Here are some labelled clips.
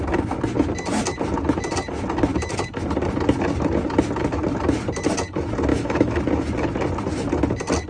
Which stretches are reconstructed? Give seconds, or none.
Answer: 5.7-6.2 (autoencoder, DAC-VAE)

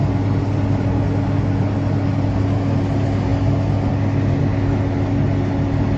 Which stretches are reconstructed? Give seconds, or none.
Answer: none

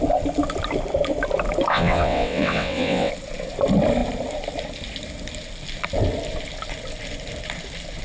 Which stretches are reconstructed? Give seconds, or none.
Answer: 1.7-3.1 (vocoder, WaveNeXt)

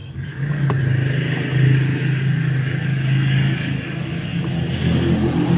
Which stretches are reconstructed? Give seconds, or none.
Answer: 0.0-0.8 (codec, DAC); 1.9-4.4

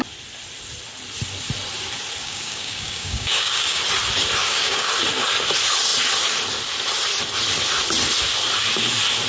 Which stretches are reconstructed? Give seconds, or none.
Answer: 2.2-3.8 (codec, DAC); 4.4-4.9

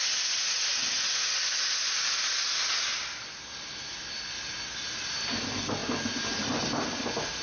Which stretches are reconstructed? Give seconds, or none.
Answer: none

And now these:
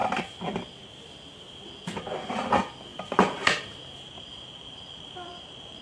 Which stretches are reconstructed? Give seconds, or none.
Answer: 2.9-5.8 (vocoder, BigVGAN v2)

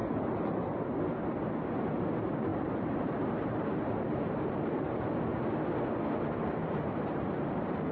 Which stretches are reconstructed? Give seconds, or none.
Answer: 2.5-5.2 (vocoder, BigVGAN v2); 6.6-7.9